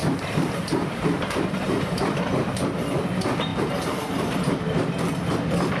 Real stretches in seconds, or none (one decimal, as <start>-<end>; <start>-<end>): 2.5-3.5; 5.0-5.8